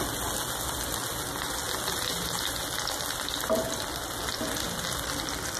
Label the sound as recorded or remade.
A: recorded